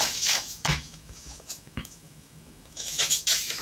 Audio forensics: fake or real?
fake